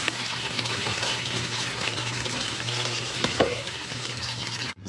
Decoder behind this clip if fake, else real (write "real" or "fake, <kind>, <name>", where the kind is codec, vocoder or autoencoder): fake, codec, SNAC